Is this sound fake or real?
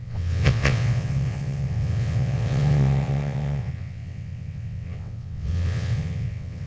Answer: fake